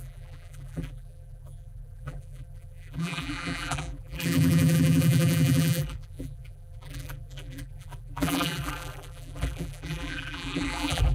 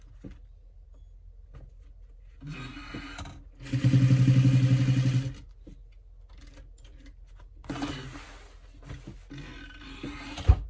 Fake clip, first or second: first